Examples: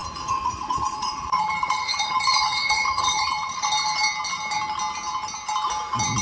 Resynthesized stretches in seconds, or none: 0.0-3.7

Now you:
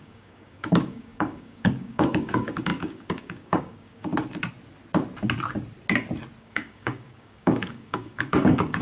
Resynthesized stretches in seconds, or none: 0.0-4.1; 6.4-8.8

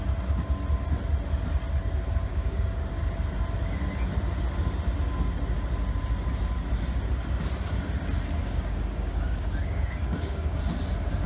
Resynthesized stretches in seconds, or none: 2.3-2.9; 8.4-10.6

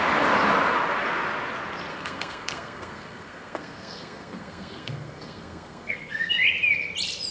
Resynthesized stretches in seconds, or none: 1.9-6.3

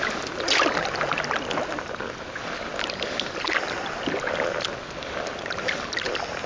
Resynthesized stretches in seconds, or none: none

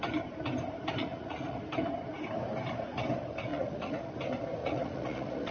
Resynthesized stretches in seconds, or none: 1.0-1.6; 3.5-4.1; 4.6-5.5